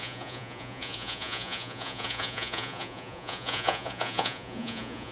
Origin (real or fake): fake